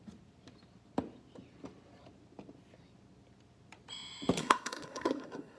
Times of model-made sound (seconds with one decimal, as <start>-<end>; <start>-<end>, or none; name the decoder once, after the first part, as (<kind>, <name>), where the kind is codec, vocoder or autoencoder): 4.4-5.6 (codec, SNAC)